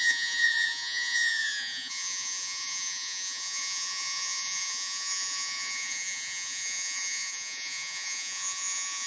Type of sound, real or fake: fake